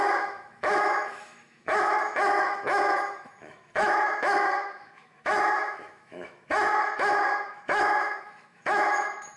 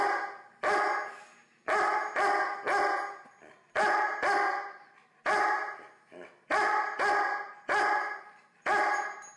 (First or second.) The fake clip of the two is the first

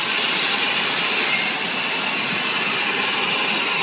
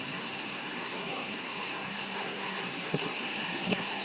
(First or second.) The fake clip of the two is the second